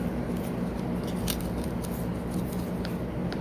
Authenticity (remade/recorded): recorded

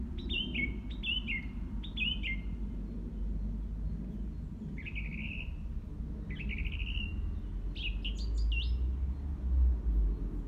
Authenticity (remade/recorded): recorded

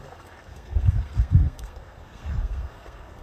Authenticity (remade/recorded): remade